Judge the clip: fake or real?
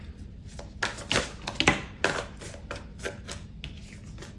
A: real